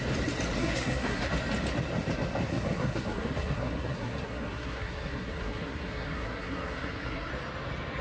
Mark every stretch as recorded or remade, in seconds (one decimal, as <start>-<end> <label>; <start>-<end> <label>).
0.0-0.6 recorded; 0.6-1.3 remade; 1.3-2.5 recorded; 2.5-7.3 remade; 7.3-8.0 recorded